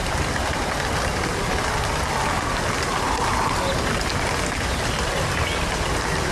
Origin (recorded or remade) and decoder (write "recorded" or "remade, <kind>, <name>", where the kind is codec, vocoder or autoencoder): recorded